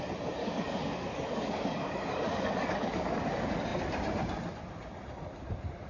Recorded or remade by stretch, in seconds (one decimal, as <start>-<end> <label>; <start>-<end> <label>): 0.0-0.4 recorded; 0.4-3.2 remade; 3.2-5.9 recorded